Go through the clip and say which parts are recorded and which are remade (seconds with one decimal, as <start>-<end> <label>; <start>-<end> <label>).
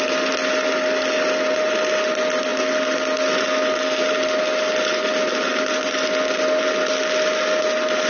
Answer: 0.0-8.1 recorded